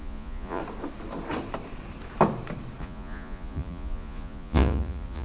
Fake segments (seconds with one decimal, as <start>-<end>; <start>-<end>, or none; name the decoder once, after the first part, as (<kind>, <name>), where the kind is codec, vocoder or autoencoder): 0.0-0.6 (vocoder, Vocos); 2.8-5.2